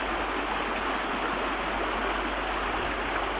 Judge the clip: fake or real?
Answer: real